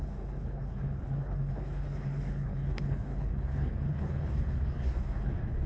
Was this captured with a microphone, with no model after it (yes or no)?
no